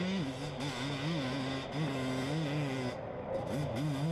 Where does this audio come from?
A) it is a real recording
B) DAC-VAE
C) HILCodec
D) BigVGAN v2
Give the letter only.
A